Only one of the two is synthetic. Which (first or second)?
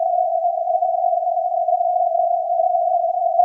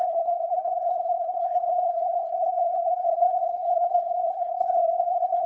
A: second